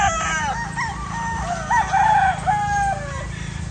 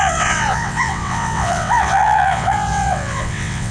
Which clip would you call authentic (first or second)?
first